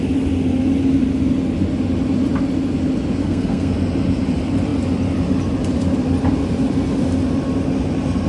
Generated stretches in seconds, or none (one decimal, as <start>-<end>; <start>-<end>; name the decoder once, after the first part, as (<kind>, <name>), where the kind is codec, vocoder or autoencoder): 3.2-3.7 (codec, SNAC)